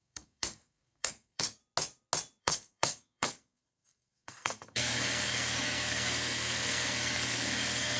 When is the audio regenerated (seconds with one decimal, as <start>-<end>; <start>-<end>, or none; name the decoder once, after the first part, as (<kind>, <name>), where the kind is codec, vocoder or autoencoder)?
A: 0.0-1.6 (codec, SNAC); 2.4-8.0